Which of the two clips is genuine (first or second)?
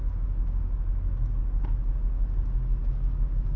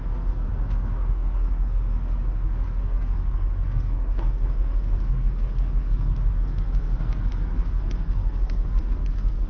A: first